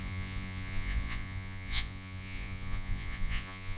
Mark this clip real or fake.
fake